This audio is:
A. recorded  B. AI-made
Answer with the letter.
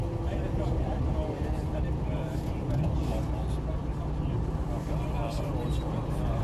A